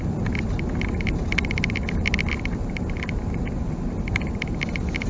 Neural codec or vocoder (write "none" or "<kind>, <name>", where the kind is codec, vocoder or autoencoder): none